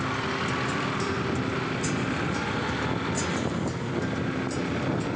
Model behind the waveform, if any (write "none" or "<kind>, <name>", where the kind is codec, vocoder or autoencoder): none